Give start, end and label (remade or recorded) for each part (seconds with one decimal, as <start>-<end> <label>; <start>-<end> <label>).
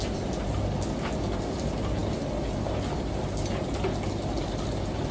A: 0.0-5.1 recorded